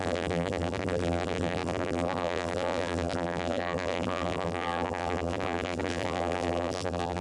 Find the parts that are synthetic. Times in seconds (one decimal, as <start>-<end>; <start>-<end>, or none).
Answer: 0.0-7.2